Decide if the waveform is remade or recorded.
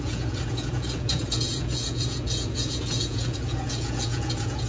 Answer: remade